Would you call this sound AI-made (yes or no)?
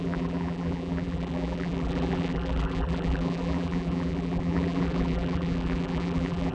yes